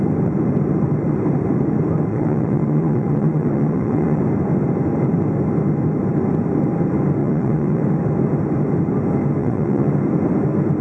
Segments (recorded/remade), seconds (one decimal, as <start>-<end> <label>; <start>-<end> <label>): 0.0-2.1 recorded; 2.1-4.2 remade; 4.2-7.2 recorded; 7.2-7.8 remade; 7.8-9.4 recorded; 9.4-9.9 remade; 9.9-10.8 recorded